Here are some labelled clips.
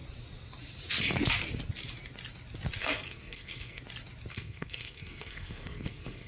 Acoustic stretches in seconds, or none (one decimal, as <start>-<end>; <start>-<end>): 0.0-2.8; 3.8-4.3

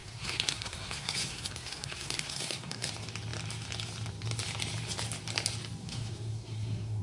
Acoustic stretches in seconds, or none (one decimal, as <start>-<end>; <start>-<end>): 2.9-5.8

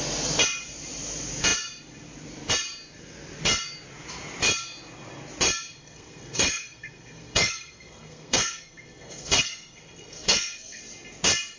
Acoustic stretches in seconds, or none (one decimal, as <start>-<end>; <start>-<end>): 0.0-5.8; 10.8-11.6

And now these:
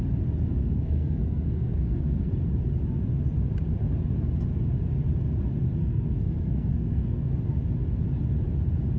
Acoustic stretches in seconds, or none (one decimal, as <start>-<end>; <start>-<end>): 0.0-0.6; 2.3-5.8; 7.3-9.0

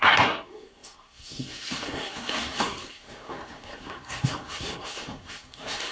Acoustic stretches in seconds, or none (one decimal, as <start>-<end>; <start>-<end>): none

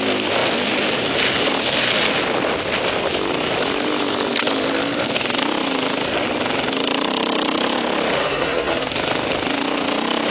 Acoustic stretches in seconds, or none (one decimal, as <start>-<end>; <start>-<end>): 0.0-8.2; 8.9-10.3